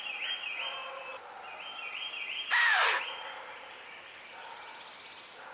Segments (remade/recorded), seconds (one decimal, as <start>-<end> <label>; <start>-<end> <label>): 0.0-5.5 recorded